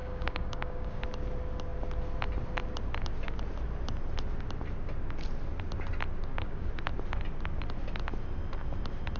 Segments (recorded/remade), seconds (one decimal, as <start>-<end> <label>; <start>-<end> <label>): 0.0-1.0 remade; 1.0-6.2 recorded; 6.2-6.7 remade; 6.7-9.2 recorded